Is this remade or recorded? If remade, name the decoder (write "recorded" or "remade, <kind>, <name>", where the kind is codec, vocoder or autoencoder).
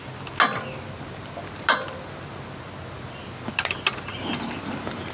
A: recorded